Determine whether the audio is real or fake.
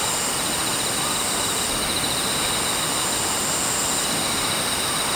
real